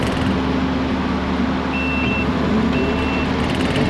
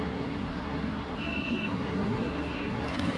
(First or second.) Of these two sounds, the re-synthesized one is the second